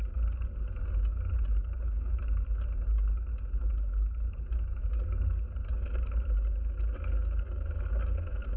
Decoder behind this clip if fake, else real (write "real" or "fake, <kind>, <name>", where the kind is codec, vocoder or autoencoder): real